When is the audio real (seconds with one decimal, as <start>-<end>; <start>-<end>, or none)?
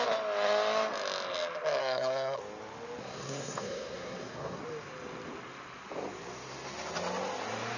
0.0-1.8; 2.4-3.0; 4.6-7.8